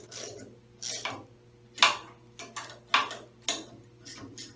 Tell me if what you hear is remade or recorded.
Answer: recorded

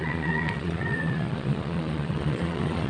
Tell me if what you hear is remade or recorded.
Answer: remade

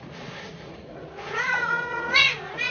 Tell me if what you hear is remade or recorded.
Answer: remade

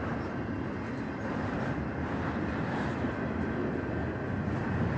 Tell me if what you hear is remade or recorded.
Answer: recorded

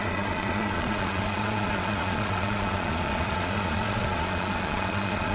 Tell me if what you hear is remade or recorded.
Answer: remade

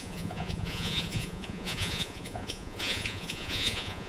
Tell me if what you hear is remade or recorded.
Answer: remade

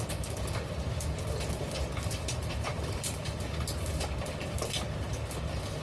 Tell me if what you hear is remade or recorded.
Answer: recorded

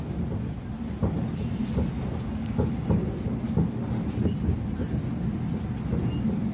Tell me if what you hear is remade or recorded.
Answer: recorded